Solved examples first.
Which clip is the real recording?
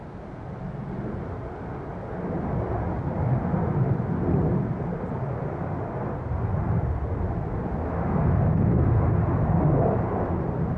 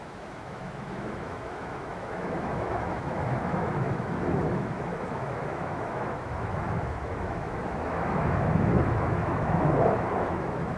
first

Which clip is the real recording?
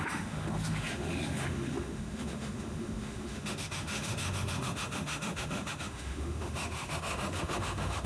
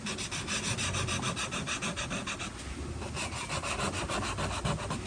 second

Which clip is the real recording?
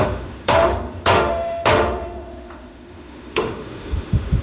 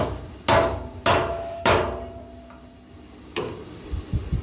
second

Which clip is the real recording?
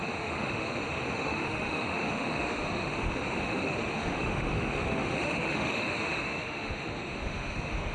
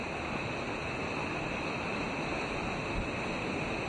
second